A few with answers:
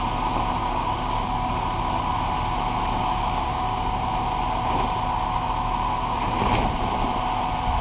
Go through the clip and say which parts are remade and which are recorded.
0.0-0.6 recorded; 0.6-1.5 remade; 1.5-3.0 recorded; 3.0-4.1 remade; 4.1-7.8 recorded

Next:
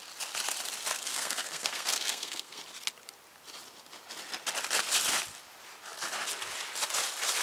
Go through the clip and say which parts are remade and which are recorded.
0.0-0.9 recorded; 0.9-2.6 remade; 2.6-7.4 recorded

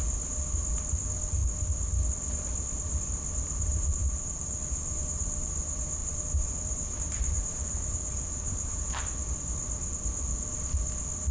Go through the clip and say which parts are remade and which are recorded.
0.0-3.7 recorded; 3.7-5.5 remade; 5.5-6.0 recorded; 6.0-9.0 remade; 9.0-11.3 recorded

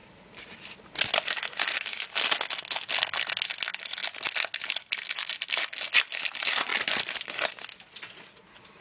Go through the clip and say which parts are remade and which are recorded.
0.0-2.0 remade; 2.0-6.7 recorded; 6.7-7.3 remade; 7.3-8.8 recorded

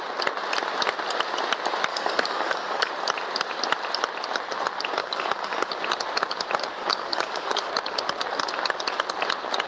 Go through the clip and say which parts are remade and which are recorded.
0.0-1.9 recorded; 1.9-2.9 remade; 2.9-5.0 recorded; 5.0-5.7 remade; 5.7-6.8 recorded; 6.8-7.7 remade; 7.7-9.7 recorded

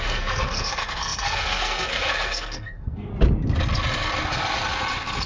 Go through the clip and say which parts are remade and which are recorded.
0.0-3.1 remade; 3.1-5.3 recorded